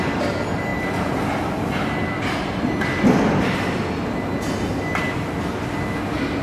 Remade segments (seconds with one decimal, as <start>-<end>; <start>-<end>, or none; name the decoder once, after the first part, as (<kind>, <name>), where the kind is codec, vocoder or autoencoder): 0.7-2.6 (vocoder, BigVGAN v2)